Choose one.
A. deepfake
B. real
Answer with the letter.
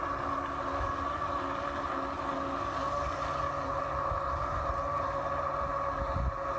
B